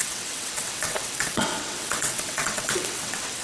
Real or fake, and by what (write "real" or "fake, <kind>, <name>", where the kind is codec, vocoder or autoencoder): fake, vocoder, WaveNeXt